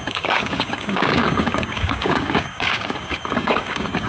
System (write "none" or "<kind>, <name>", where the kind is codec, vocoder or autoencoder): codec, DAC